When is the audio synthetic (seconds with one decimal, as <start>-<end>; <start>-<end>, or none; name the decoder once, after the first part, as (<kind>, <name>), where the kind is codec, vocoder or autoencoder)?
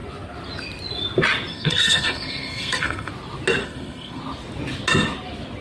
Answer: 1.5-3.1 (codec, SNAC); 3.6-4.2